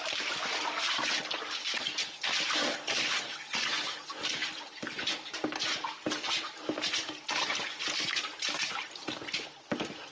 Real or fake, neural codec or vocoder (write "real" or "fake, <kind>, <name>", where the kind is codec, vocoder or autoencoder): real